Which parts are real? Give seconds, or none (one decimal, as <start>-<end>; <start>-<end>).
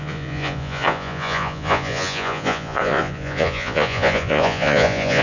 none